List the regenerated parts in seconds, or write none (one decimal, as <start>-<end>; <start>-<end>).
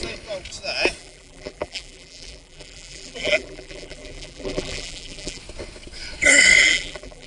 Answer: 1.0-5.4; 6.6-7.3